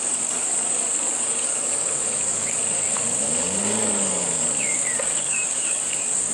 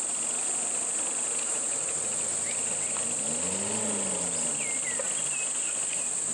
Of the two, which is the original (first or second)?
second